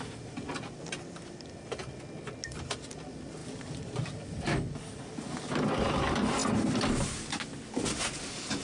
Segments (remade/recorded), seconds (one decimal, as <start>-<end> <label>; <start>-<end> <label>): 0.0-3.4 recorded; 3.4-5.0 remade; 5.0-8.6 recorded